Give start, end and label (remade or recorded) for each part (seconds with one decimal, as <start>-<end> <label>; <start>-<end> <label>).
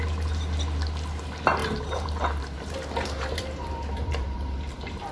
0.0-1.6 recorded; 1.6-5.1 remade